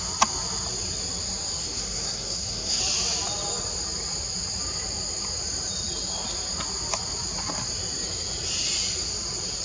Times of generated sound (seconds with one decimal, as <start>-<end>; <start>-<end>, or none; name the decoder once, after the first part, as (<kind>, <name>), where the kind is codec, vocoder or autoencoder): 1.6-2.8 (codec, SNAC)